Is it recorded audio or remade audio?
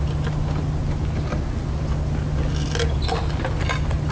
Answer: recorded